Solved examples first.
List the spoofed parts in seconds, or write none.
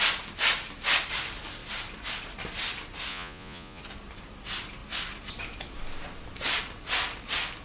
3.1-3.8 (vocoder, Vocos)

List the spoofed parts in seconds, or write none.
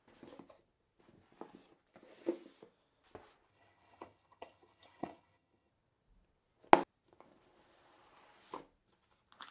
3.5-5.7 (vocoder, HiFi-GAN)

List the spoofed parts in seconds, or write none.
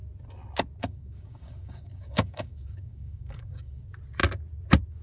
0.8-3.8 (codec, DAC)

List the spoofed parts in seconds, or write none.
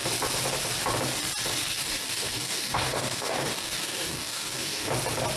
1.7-4.9 (codec, DAC)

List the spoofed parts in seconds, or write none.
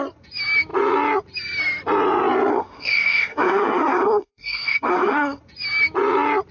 2.5-5.4 (codec, SNAC)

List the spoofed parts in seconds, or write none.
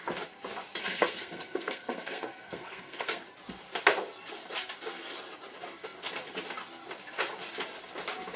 0.8-3.2 (codec, SNAC)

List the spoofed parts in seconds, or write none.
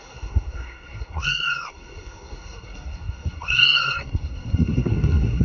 0.0-5.4 (codec, SNAC)